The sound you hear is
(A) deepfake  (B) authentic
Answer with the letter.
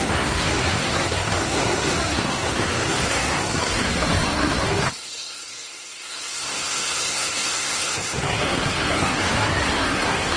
A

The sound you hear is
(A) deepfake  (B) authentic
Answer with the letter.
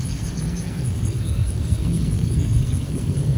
A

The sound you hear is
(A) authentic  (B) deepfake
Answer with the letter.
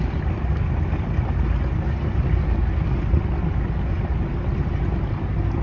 A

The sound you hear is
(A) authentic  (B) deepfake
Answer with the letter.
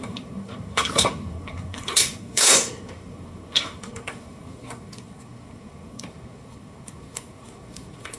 B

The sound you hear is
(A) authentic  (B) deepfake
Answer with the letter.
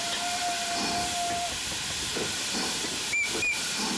A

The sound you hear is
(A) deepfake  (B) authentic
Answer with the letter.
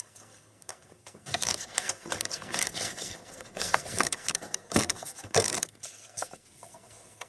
A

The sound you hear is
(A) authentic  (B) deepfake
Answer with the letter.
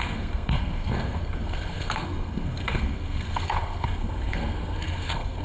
B